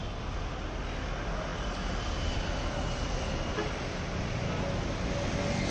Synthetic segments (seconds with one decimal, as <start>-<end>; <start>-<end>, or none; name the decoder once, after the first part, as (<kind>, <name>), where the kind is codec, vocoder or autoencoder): none